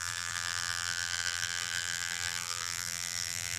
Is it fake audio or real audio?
fake